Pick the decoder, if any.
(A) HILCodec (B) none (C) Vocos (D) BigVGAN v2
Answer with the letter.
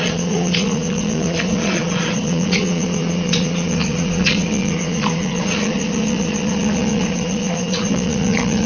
C